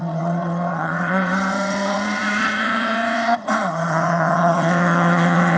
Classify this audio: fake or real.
fake